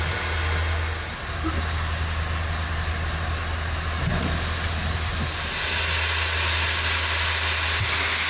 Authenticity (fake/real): real